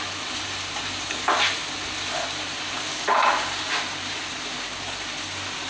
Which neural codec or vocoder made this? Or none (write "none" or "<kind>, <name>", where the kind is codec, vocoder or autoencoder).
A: none